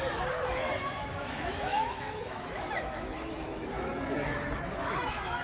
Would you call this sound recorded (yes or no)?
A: no